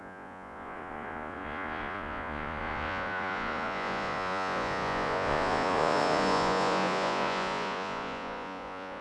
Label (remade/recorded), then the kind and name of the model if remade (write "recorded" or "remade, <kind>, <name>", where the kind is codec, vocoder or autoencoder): remade, vocoder, Vocos